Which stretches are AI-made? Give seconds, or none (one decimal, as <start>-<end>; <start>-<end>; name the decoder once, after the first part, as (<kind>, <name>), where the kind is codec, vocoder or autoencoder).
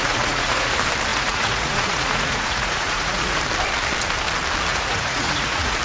0.0-0.7 (vocoder, Vocos); 1.1-3.4; 4.7-5.8